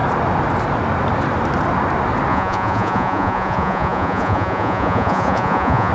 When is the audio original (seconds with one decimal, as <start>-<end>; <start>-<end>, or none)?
0.0-2.3